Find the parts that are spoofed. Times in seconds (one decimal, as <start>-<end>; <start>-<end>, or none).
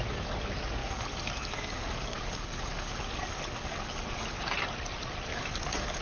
0.8-4.4; 5.3-6.0